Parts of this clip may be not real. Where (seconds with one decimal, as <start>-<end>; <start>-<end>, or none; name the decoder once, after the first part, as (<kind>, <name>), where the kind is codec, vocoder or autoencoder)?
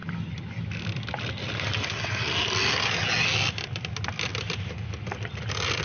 none